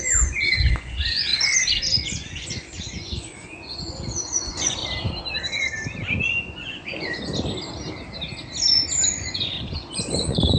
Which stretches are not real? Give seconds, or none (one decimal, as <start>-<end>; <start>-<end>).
0.0-1.3; 1.8-4.8; 6.4-7.3; 9.1-10.6